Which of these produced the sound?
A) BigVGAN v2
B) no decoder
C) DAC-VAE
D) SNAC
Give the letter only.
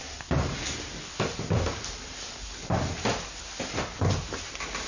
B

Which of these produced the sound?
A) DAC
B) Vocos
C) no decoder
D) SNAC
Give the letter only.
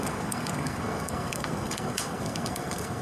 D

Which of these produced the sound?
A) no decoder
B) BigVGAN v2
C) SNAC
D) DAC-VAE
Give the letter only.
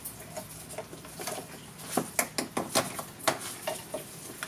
A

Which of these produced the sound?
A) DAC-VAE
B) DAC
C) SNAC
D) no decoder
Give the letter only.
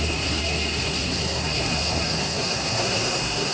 C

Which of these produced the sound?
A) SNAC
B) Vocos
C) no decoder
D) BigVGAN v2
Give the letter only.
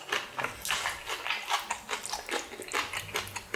C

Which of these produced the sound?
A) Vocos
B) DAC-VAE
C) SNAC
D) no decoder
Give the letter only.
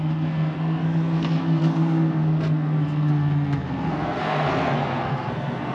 C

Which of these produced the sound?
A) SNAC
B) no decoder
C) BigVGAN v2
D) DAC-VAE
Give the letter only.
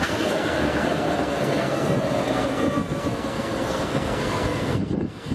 A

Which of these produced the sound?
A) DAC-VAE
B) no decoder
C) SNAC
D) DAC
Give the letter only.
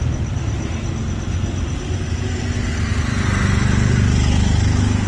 B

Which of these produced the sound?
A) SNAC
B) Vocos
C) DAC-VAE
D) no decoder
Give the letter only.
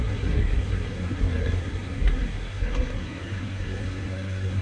A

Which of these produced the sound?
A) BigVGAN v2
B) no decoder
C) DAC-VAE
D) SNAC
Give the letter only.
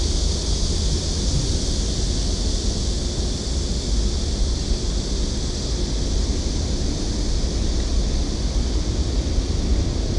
B